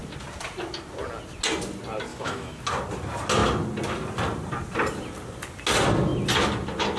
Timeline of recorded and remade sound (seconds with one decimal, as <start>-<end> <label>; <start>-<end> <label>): 0.0-2.1 recorded; 2.1-2.6 remade; 2.6-7.0 recorded